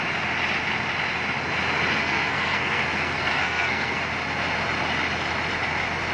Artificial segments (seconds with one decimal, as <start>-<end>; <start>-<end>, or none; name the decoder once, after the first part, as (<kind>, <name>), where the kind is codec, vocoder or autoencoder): 2.0-4.0 (codec, SNAC)